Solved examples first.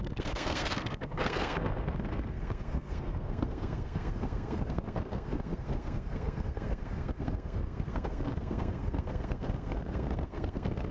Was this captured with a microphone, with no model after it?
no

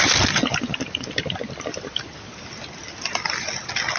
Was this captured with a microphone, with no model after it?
yes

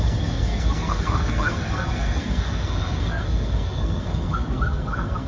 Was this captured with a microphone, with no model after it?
no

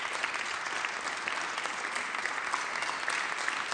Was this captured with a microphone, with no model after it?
yes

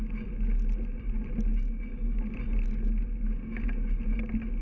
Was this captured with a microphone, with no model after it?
yes